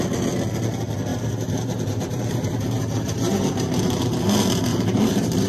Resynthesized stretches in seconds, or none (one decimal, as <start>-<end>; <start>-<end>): 1.1-4.0; 4.7-5.5

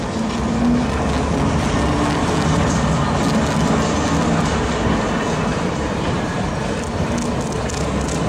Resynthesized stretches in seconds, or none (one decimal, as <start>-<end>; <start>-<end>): 5.5-6.5

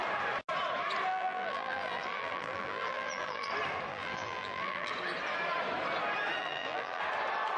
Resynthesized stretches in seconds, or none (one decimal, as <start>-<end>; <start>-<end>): 1.1-3.5; 3.9-4.9; 6.4-7.0

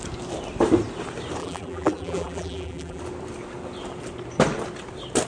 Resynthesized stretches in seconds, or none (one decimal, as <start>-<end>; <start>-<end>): 1.4-3.0

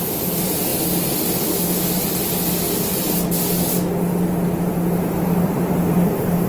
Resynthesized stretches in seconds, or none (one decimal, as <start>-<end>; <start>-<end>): 0.0-0.7; 4.6-6.5

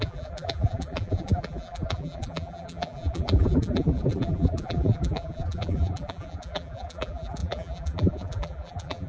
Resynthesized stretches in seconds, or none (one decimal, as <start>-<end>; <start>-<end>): 0.0-9.1

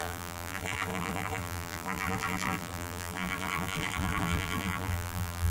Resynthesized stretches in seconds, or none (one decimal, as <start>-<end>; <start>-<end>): 0.0-5.5

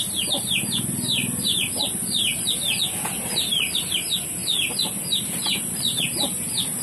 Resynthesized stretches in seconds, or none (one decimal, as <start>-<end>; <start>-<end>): 4.4-6.0